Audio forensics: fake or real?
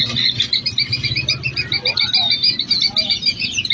real